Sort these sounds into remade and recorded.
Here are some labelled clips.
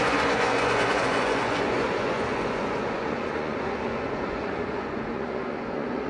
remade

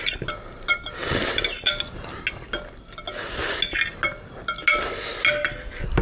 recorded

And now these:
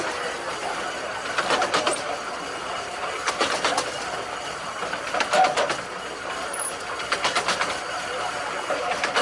recorded